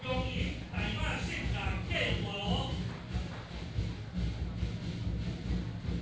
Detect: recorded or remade recorded